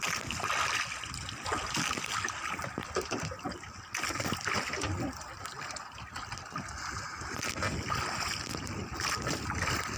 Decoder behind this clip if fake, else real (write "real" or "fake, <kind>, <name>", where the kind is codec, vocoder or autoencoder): real